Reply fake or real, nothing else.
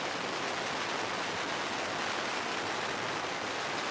real